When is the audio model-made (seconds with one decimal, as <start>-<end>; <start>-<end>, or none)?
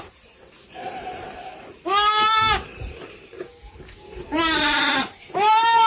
0.0-1.7; 2.4-5.9